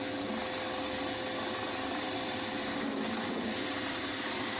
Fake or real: real